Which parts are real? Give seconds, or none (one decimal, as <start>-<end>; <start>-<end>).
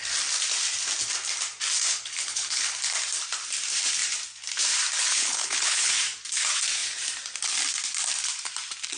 0.0-1.9; 2.7-5.1; 5.9-9.0